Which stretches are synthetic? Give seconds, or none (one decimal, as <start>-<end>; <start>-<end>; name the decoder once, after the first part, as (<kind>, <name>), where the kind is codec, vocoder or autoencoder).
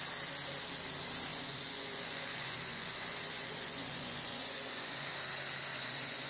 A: 1.3-5.1 (vocoder, Vocos); 5.7-6.3